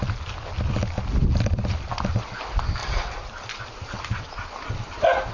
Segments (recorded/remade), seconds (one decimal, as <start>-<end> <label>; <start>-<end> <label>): 0.0-5.3 recorded